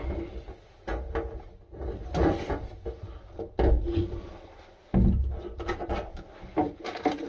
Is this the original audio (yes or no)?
yes